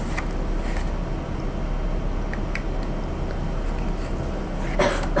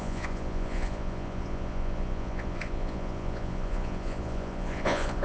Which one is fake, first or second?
second